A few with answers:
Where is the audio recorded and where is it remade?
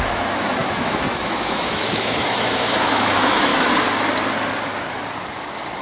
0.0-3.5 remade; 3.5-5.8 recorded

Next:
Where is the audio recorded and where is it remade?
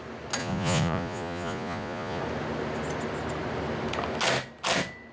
0.0-0.4 recorded; 0.4-2.2 remade; 2.2-5.1 recorded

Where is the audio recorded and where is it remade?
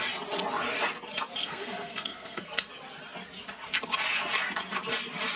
0.0-1.4 recorded; 1.4-2.7 remade; 2.7-5.4 recorded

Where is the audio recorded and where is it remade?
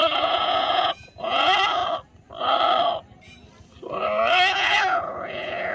0.0-1.8 remade; 1.8-4.5 recorded; 4.5-5.7 remade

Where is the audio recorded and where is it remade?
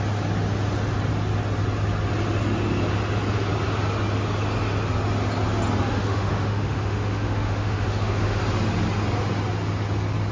0.0-5.9 recorded; 5.9-8.4 remade; 8.4-10.3 recorded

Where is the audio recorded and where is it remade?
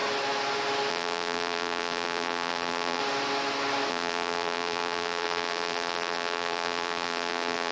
0.0-0.9 recorded; 0.9-3.0 remade; 3.0-3.9 recorded; 3.9-7.7 remade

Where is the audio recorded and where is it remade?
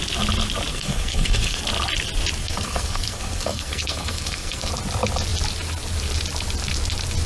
0.0-0.7 recorded; 0.7-1.6 remade; 1.6-2.4 recorded; 2.4-4.7 remade; 4.7-7.3 recorded